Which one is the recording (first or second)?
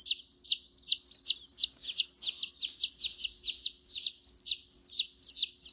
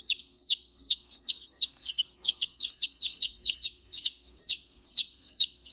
first